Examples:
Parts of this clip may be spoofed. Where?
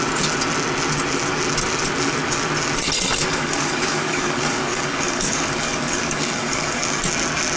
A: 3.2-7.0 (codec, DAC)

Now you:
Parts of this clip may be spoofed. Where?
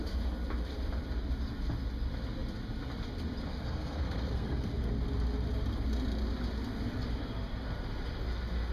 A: 3.5-4.9 (codec, SNAC)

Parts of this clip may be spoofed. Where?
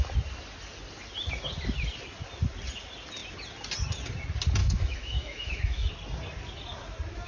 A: 4.6-5.9 (autoencoder, DAC-VAE)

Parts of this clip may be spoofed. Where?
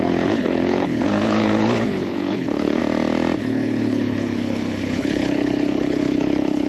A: 0.0-2.8 (codec, HILCodec); 3.4-6.7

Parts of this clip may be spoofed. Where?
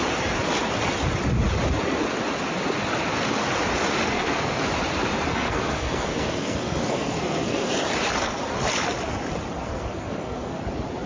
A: 4.0-4.6 (codec, SNAC); 5.3-7.7; 9.6-10.6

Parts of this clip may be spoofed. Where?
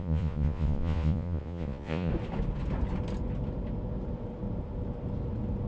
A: 0.0-2.1 (vocoder, Vocos)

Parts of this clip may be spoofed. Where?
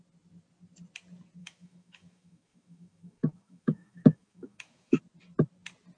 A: 1.4-5.0 (autoencoder, DAC-VAE)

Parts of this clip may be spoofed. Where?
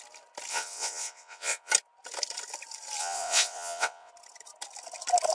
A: 0.5-1.7 (vocoder, WaveNeXt); 3.0-4.1